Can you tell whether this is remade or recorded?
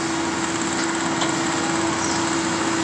recorded